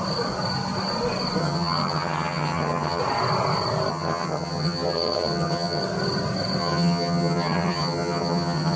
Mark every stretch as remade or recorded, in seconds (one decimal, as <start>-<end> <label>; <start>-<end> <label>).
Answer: 0.0-1.4 recorded; 1.4-3.0 remade; 3.0-3.9 recorded; 3.9-5.8 remade; 5.8-6.6 recorded; 6.6-8.8 remade